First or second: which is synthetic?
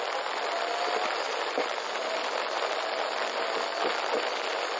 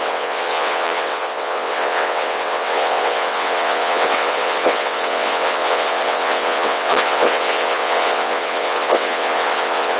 second